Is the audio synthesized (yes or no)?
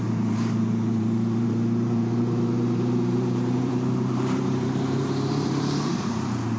yes